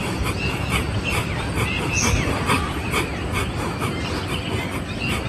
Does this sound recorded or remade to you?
recorded